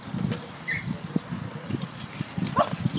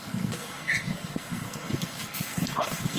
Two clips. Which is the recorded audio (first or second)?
first